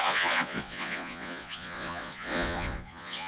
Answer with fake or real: fake